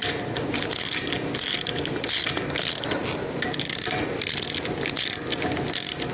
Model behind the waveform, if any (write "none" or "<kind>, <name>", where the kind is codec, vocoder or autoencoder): none